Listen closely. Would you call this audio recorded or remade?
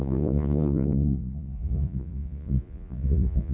remade